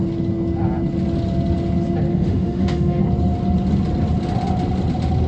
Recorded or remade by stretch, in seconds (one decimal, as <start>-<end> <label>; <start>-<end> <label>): 0.0-2.1 recorded; 2.1-3.0 remade; 3.0-5.3 recorded